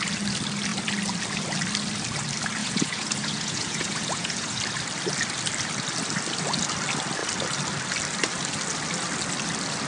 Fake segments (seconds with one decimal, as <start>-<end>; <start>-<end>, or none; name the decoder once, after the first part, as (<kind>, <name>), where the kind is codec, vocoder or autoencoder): 2.6-4.6 (vocoder, Vocos)